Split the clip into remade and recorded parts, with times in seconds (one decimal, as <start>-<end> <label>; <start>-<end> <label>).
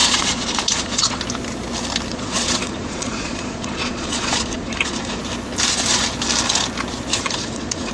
0.0-1.2 remade; 1.2-2.1 recorded; 2.1-5.2 remade; 5.2-7.1 recorded; 7.1-7.9 remade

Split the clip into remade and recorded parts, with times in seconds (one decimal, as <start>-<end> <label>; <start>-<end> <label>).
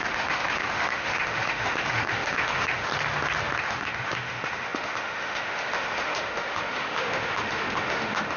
0.0-2.9 remade; 2.9-3.6 recorded; 3.6-8.4 remade